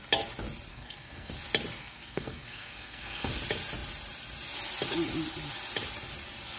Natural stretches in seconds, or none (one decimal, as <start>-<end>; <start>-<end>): 0.0-0.7; 1.3-1.8; 3.3-6.6